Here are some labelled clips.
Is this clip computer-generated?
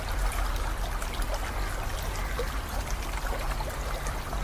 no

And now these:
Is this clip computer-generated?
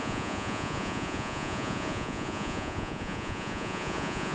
yes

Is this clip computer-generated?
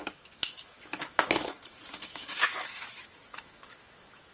yes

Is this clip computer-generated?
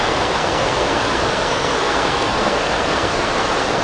yes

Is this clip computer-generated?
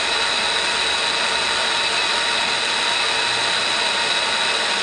no